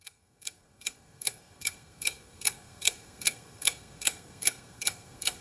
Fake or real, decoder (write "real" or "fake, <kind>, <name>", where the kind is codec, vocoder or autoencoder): fake, codec, SNAC